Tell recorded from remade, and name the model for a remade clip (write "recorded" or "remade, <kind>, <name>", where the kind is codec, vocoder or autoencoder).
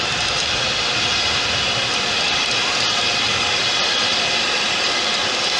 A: recorded